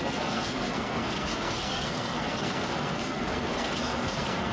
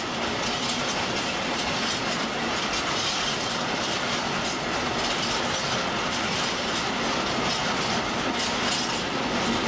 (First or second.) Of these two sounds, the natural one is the second